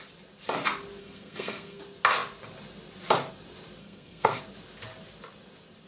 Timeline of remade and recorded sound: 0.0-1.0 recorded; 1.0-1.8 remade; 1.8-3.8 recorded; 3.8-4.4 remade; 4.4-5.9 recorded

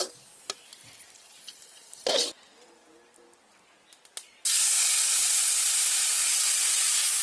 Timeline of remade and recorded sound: 0.0-7.2 recorded

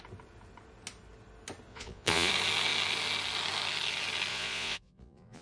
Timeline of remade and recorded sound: 0.0-1.7 recorded; 1.7-2.3 remade; 2.3-4.3 recorded; 4.3-5.4 remade

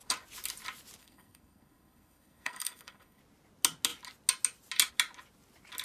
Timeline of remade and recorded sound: 0.0-1.0 recorded; 1.0-3.2 remade; 3.2-5.8 recorded

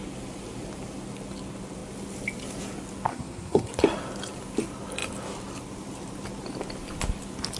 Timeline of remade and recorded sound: 0.0-3.1 recorded; 3.1-3.7 remade; 3.7-7.6 recorded

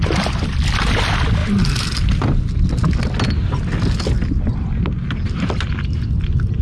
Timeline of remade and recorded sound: 0.0-6.6 recorded

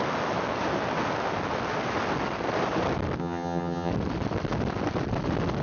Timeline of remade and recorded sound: 0.0-3.2 recorded; 3.2-3.9 remade; 3.9-5.6 recorded

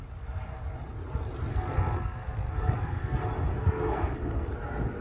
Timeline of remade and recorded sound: 0.0-1.5 recorded; 1.5-3.2 remade; 3.2-3.6 recorded; 3.6-4.5 remade; 4.5-5.0 recorded